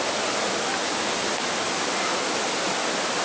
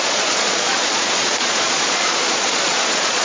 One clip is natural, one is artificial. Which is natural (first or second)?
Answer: first